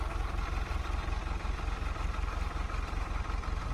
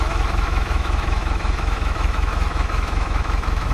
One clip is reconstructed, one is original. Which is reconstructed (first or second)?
second